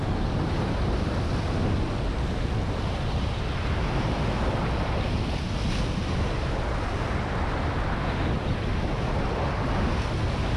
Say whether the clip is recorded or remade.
recorded